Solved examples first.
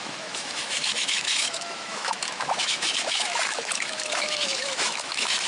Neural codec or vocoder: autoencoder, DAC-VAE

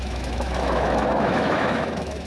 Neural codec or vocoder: autoencoder, DAC-VAE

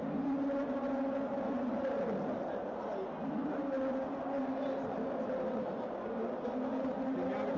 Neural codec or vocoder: none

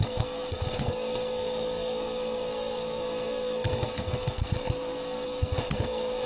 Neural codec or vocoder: codec, SNAC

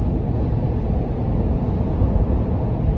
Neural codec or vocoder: none